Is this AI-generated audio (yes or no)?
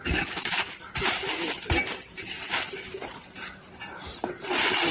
no